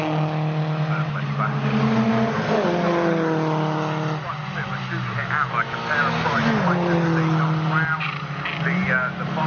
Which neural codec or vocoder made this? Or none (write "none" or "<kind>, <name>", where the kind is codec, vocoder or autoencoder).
none